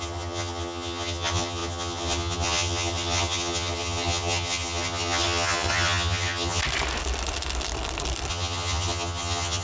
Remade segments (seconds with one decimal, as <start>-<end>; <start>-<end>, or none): 0.0-6.6; 8.3-9.6